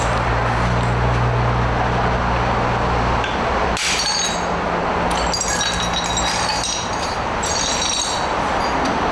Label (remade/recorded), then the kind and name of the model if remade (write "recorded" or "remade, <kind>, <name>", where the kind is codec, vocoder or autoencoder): recorded